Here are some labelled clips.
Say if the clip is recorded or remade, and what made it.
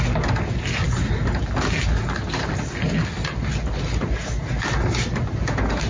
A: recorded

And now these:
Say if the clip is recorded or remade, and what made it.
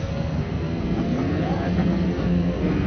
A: remade, codec, SNAC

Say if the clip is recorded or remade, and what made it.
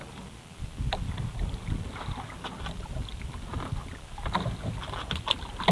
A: recorded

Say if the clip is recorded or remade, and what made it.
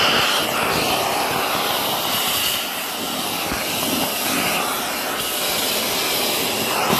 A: recorded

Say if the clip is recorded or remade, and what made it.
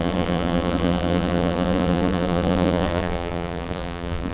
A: remade, vocoder, BigVGAN v2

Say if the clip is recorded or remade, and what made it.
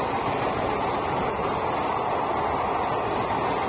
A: recorded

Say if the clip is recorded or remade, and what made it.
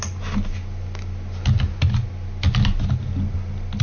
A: recorded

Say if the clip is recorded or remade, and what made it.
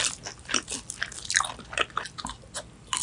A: recorded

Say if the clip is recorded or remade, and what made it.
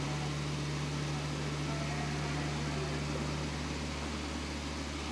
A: recorded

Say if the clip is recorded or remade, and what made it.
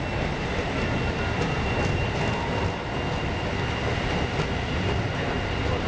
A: recorded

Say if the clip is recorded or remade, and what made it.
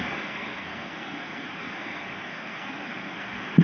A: remade, codec, SNAC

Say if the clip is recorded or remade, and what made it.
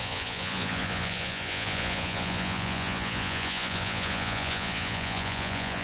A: remade, vocoder, Vocos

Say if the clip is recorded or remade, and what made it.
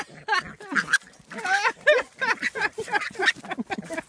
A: recorded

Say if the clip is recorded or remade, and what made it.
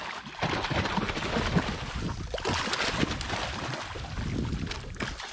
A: recorded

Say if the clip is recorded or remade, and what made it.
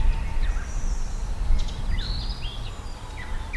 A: recorded